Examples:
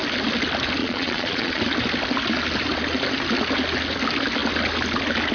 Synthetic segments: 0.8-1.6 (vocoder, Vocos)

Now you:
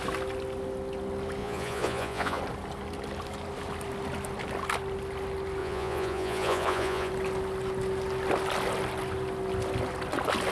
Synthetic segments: 1.4-2.4 (vocoder, Vocos); 5.6-7.1

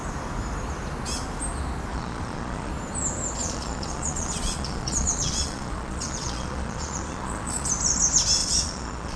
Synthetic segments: 1.9-2.7 (vocoder, Vocos); 3.4-7.7; 8.4-9.2

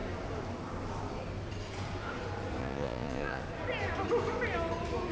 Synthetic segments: 2.6-3.4 (vocoder, Vocos)